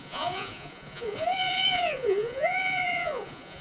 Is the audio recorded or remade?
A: remade